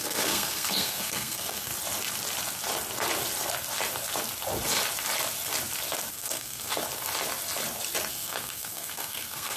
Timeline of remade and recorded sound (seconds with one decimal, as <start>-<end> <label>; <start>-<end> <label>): 0.0-1.7 remade; 1.7-6.1 recorded; 6.1-6.7 remade; 6.7-8.1 recorded; 8.1-9.6 remade